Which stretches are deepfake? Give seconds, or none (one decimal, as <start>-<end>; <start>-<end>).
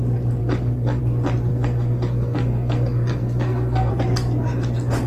0.4-1.0; 1.5-3.9